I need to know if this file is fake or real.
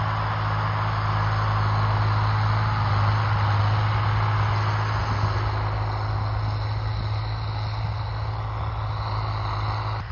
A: real